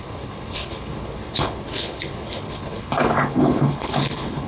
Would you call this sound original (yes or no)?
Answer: no